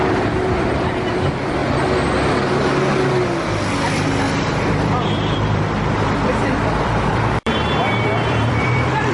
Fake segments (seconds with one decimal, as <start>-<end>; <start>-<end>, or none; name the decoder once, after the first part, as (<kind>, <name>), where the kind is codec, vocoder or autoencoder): 0.0-1.6 (vocoder, BigVGAN v2); 4.3-9.1